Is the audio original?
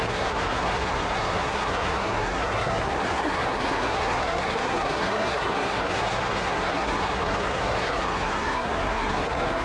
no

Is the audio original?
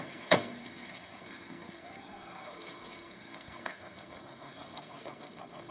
no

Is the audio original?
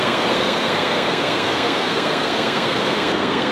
no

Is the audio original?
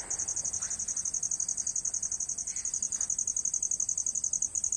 yes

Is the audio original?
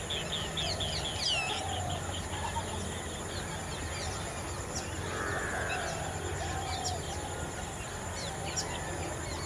yes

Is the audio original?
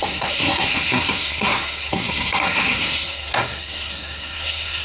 no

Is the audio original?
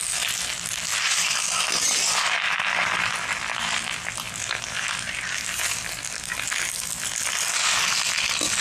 yes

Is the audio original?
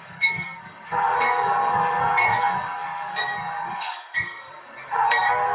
no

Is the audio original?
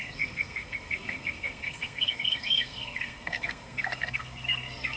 no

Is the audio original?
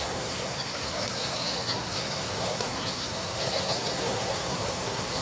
no